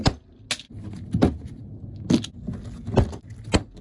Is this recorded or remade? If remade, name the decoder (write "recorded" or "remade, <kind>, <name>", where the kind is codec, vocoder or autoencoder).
recorded